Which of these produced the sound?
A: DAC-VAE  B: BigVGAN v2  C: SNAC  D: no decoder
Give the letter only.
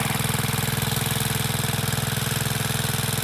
D